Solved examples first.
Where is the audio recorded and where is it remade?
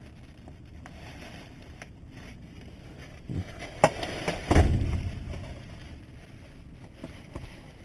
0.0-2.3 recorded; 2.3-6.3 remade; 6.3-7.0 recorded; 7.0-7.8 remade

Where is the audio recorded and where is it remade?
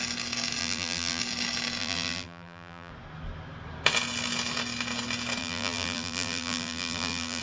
0.0-0.6 recorded; 0.6-1.2 remade; 1.2-1.8 recorded; 1.8-2.9 remade; 2.9-5.4 recorded; 5.4-7.4 remade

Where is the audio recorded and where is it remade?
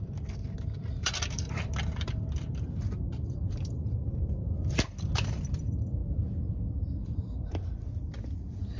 0.0-8.8 remade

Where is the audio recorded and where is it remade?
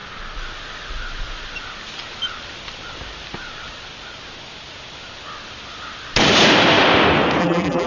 0.0-7.4 recorded; 7.4-7.9 remade